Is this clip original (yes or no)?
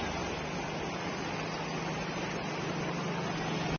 yes